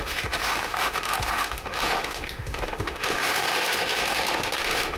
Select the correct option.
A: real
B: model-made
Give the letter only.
B